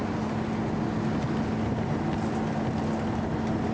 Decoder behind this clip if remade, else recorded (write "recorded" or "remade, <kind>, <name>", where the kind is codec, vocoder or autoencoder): recorded